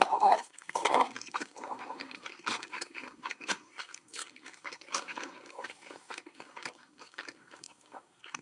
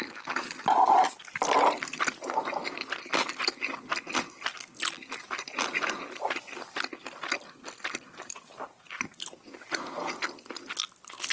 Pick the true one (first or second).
second